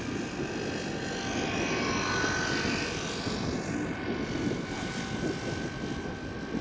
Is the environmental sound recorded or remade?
recorded